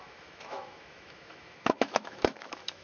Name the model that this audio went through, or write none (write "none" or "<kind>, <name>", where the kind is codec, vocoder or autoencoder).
autoencoder, DAC-VAE